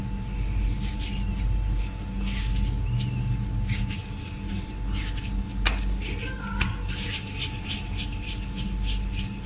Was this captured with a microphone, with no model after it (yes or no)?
yes